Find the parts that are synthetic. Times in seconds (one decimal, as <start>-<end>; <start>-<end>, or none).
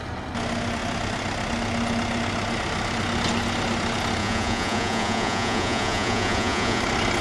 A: 4.2-6.8